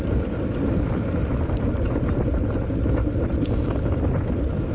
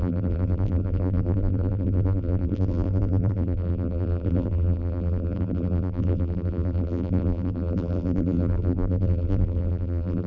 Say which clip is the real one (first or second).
first